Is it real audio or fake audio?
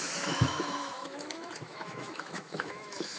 fake